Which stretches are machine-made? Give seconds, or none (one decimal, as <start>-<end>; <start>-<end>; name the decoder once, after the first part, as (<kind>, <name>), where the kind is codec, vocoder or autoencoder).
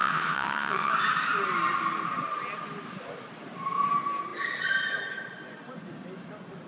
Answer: 0.0-0.9 (vocoder, WaveNeXt)